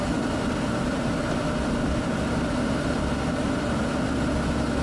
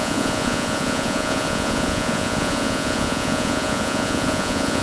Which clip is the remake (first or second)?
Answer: second